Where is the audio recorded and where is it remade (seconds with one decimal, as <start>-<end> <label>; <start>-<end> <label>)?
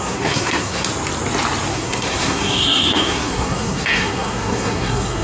0.0-0.9 remade; 0.9-1.7 recorded; 1.7-5.2 remade